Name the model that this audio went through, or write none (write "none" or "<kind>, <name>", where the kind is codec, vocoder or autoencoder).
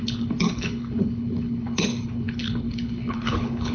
codec, HILCodec